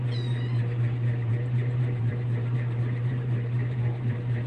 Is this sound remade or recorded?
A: remade